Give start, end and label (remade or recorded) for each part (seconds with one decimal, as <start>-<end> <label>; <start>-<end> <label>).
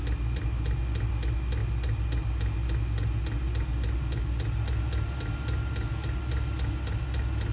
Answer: 0.0-7.5 recorded